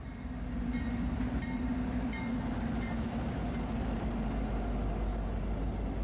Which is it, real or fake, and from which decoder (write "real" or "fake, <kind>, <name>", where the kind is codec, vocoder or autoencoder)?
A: real